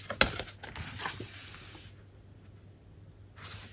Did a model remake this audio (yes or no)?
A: no